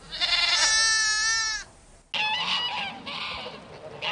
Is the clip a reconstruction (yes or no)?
no